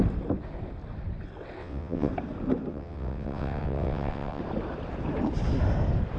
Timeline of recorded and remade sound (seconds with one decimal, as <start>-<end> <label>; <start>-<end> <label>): 0.0-1.6 recorded; 1.6-2.1 remade; 2.1-2.7 recorded; 2.7-4.4 remade; 4.4-6.2 recorded